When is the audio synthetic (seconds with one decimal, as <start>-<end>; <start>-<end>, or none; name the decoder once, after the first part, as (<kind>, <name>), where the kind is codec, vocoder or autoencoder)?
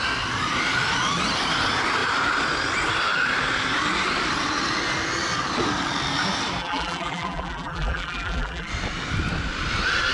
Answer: 6.6-8.7 (vocoder, BigVGAN v2)